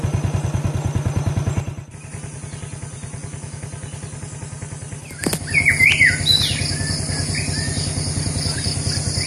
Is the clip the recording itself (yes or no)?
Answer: yes